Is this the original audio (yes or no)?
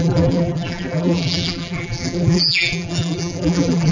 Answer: no